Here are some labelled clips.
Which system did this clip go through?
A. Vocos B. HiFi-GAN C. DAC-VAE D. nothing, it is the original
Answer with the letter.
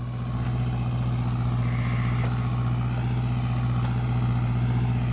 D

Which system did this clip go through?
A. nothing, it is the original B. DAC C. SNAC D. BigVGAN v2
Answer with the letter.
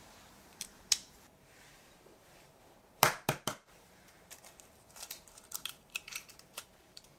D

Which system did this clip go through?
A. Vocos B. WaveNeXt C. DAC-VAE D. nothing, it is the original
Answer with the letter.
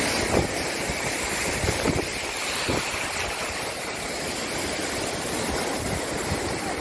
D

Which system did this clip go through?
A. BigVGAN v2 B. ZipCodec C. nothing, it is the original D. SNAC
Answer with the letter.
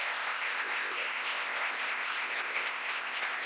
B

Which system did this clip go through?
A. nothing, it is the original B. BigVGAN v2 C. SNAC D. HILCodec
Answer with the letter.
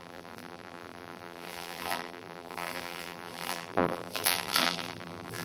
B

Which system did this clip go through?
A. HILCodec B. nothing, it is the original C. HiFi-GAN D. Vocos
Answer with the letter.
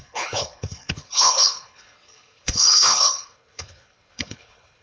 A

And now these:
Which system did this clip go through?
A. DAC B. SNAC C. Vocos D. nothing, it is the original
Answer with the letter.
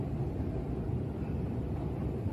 D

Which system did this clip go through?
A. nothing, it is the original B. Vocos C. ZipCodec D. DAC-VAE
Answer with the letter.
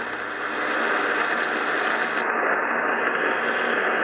A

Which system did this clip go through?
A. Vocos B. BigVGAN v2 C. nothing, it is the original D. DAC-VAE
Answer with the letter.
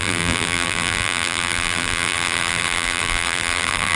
B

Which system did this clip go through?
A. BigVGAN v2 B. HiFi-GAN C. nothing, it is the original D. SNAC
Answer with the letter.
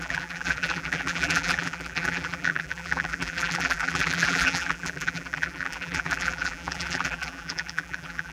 A